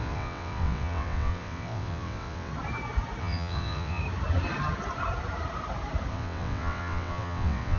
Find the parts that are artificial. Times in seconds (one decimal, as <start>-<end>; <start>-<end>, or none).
0.0-2.5; 3.2-4.0; 6.1-7.8